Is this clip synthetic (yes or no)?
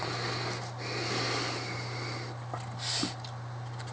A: no